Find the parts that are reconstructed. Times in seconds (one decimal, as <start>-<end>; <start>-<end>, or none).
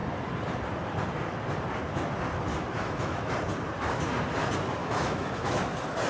2.5-3.3; 4.8-5.6